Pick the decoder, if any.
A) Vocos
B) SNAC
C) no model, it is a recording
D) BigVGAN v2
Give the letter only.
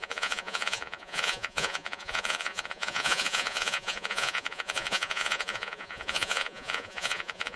A